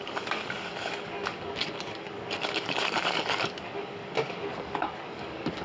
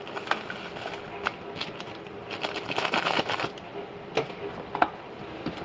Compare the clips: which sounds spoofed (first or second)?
first